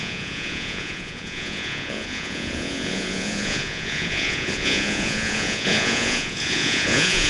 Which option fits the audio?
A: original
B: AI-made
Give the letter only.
B